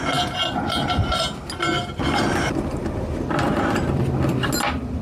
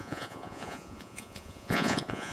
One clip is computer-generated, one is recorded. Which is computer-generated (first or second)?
second